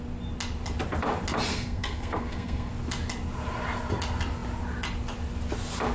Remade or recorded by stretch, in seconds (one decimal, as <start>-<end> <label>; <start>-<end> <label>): 0.0-1.5 recorded; 1.5-2.7 remade; 2.7-5.9 recorded